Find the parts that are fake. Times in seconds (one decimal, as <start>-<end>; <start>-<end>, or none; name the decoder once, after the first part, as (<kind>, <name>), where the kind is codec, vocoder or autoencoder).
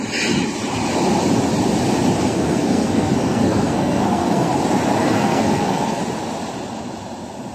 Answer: 2.2-4.6 (codec, SNAC); 5.0-6.0